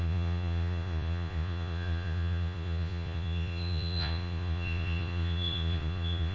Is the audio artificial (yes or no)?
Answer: yes